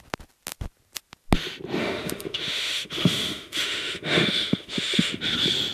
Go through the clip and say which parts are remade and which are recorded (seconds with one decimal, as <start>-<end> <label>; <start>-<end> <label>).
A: 0.0-1.8 recorded; 1.8-5.2 remade; 5.2-5.7 recorded

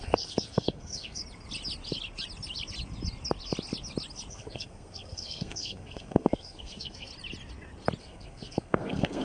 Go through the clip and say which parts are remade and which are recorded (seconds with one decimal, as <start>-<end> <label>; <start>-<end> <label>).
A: 0.0-1.2 remade; 1.2-4.3 recorded; 4.3-7.1 remade; 7.1-8.0 recorded; 8.0-9.2 remade

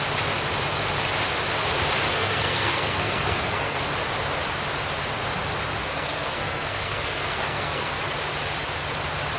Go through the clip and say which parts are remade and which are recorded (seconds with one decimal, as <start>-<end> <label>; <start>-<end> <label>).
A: 0.0-2.1 recorded; 2.1-3.8 remade; 3.8-5.9 recorded; 5.9-8.0 remade; 8.0-9.4 recorded

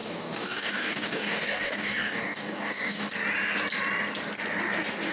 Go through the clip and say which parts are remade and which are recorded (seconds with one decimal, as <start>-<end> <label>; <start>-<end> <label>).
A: 0.0-3.1 remade; 3.1-5.1 recorded

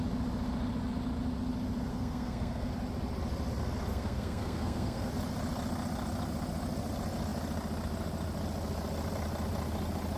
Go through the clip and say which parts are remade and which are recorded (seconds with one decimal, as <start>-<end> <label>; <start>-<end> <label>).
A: 0.0-1.9 recorded; 1.9-2.7 remade; 2.7-3.9 recorded; 3.9-5.1 remade; 5.1-10.2 recorded

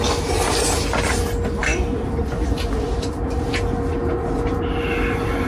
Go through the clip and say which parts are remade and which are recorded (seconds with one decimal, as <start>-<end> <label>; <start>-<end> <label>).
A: 0.0-1.7 recorded; 1.7-3.4 remade; 3.4-4.0 recorded; 4.0-4.6 remade; 4.6-5.5 recorded

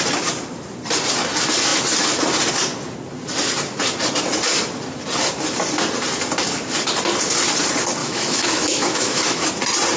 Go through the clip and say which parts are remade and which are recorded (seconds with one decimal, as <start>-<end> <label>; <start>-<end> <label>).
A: 0.0-8.0 recorded; 8.0-9.5 remade; 9.5-10.0 recorded

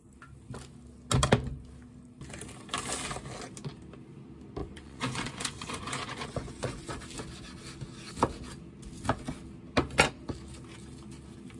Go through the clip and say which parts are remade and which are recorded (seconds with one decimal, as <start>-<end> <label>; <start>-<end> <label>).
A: 0.0-4.6 recorded; 4.6-6.9 remade; 6.9-11.6 recorded